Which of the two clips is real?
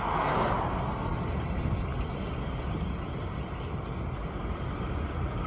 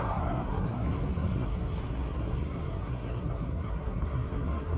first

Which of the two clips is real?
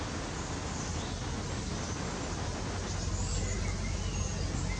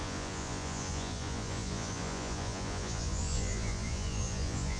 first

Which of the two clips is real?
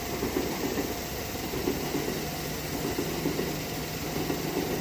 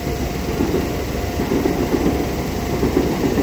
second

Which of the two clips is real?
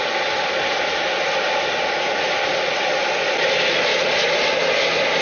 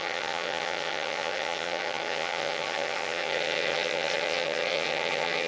first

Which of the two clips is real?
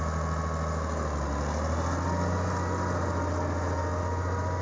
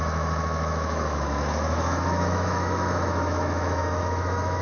first